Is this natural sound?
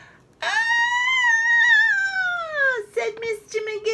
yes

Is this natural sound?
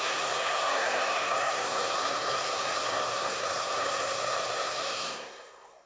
no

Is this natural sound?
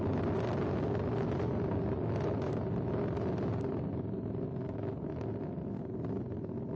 yes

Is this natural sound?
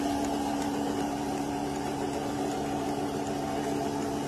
yes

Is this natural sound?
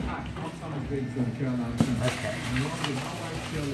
yes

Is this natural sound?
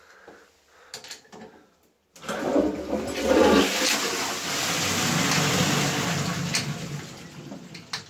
yes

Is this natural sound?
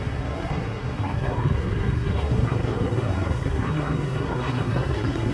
no